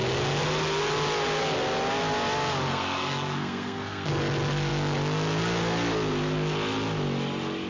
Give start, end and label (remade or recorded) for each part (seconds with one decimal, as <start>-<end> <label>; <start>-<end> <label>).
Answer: 0.0-2.7 recorded; 2.7-4.1 remade; 4.1-7.7 recorded